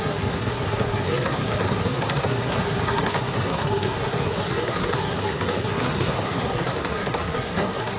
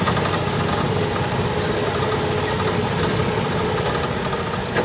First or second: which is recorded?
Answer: second